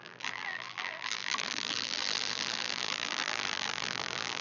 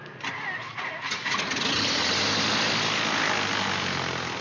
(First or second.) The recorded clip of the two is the second